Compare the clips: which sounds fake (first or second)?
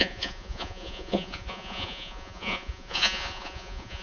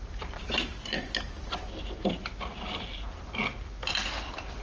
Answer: first